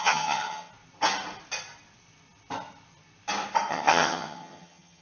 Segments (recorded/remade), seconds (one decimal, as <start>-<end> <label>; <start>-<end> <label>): 0.0-0.7 remade; 0.7-3.7 recorded; 3.7-5.0 remade